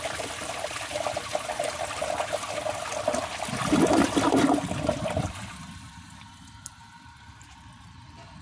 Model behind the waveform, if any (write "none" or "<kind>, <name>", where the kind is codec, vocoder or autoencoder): vocoder, BigVGAN v2